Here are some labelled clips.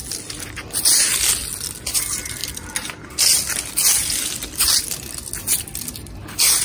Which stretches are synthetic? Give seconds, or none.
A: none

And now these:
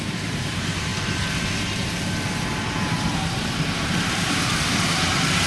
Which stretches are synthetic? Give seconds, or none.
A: 0.0-0.9 (vocoder, BigVGAN v2); 2.7-5.5

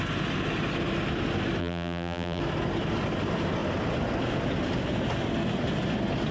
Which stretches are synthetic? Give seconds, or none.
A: 1.6-2.4 (vocoder, BigVGAN v2)

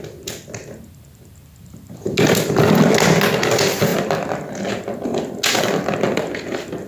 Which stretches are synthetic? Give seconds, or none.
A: none

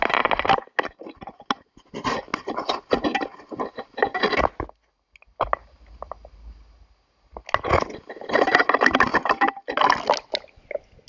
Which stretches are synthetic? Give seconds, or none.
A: none